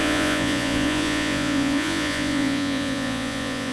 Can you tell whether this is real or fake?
fake